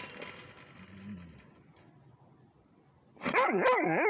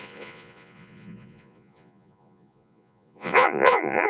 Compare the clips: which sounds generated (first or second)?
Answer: second